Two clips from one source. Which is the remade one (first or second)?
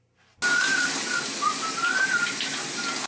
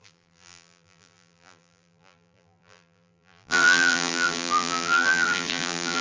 second